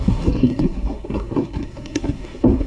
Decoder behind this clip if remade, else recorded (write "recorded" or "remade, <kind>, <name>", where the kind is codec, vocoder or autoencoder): remade, codec, SNAC